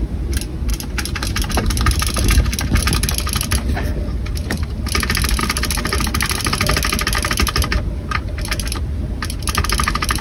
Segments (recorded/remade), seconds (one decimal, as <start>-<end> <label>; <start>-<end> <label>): 0.0-4.3 recorded; 4.3-4.9 remade; 4.9-10.2 recorded